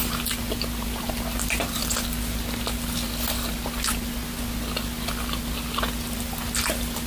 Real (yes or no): yes